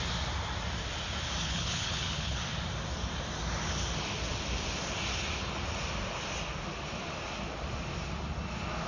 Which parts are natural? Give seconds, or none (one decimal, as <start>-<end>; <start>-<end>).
0.0-1.4; 2.4-8.9